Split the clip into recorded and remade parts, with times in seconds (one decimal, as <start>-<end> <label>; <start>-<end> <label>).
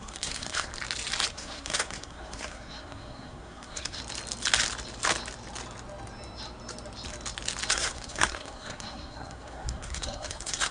0.0-0.7 remade; 0.7-1.3 recorded; 1.3-4.0 remade; 4.0-7.7 recorded; 7.7-10.7 remade